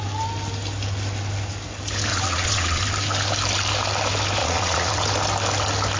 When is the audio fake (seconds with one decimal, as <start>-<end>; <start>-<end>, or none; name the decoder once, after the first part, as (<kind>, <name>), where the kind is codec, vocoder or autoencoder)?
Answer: 2.1-2.8 (vocoder, Vocos); 4.4-4.9

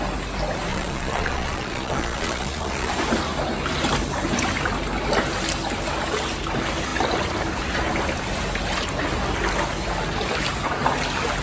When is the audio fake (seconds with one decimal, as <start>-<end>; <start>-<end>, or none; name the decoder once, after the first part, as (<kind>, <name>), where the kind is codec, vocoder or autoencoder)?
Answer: 0.7-2.9 (vocoder, Vocos)

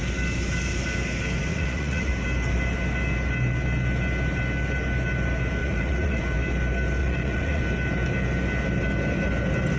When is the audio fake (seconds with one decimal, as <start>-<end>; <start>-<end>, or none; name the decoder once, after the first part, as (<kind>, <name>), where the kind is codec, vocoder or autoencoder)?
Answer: 1.5-2.1 (vocoder, Vocos); 5.6-6.2; 7.0-7.6

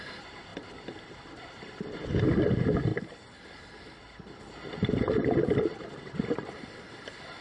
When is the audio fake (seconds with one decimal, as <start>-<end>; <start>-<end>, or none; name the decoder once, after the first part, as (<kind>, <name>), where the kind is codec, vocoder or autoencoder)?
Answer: none